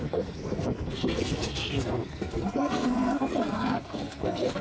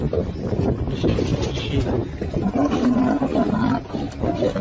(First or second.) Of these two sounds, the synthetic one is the first